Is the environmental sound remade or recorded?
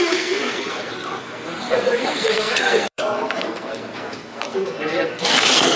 remade